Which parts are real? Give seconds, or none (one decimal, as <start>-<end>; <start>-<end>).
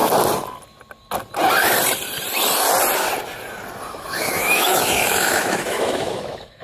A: 0.0-4.0